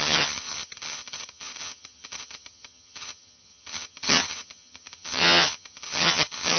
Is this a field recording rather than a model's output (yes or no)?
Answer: no